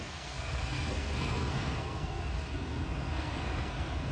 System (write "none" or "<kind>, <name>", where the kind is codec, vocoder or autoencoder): codec, SNAC